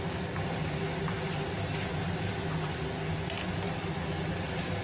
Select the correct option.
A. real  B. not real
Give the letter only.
A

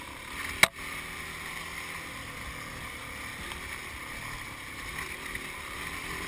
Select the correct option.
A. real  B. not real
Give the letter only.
A